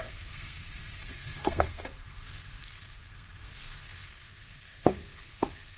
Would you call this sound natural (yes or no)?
no